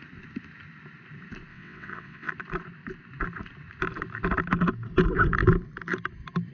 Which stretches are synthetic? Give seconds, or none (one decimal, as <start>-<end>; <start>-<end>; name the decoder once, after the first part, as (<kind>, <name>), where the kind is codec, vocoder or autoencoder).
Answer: 1.5-2.3 (vocoder, WaveNeXt)